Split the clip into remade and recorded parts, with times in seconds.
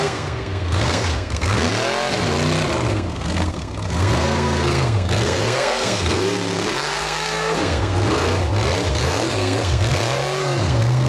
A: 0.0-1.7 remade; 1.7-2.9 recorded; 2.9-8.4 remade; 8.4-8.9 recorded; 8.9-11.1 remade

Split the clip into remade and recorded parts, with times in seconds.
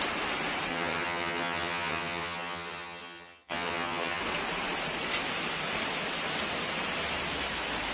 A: 0.0-0.7 recorded; 0.7-4.2 remade; 4.2-7.9 recorded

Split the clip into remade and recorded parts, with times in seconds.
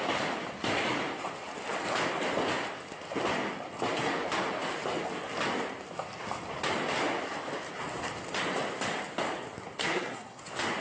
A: 0.0-9.8 recorded; 9.8-10.4 remade; 10.4-10.8 recorded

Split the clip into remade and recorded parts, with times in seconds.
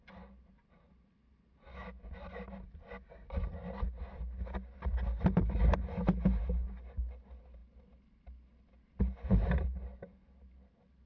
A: 0.0-11.1 recorded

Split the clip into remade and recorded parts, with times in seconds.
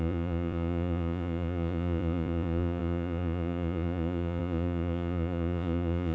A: 0.0-6.1 remade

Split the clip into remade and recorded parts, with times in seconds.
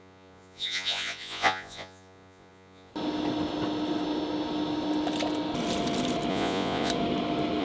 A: 0.0-2.9 remade; 2.9-6.3 recorded; 6.3-6.9 remade; 6.9-7.6 recorded